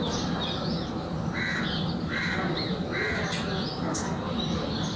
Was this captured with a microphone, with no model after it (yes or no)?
yes